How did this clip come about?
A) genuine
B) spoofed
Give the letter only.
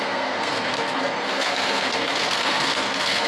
B